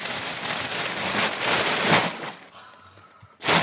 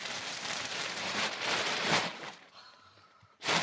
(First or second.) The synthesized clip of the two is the second